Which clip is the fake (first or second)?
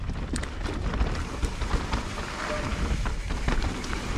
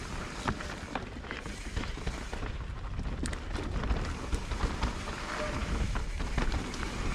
first